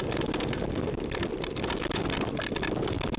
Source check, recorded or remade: recorded